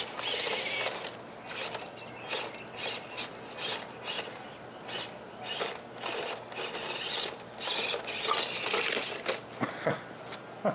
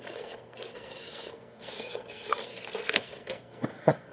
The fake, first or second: second